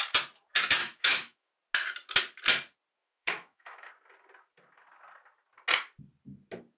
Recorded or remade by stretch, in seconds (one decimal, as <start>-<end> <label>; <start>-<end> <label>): 0.0-0.8 recorded; 0.8-1.5 remade; 1.5-3.0 recorded; 3.0-3.9 remade; 3.9-6.8 recorded